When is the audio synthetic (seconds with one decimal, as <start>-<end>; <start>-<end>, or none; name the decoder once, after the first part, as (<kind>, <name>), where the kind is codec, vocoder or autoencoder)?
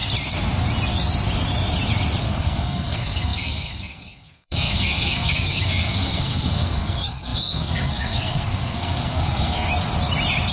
2.2-9.7 (codec, SNAC)